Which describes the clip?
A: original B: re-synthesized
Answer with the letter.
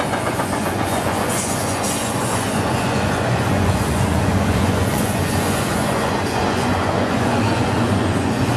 B